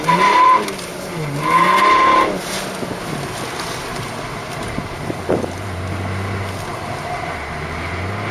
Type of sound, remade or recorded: recorded